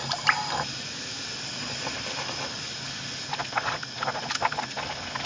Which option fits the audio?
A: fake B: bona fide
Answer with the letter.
B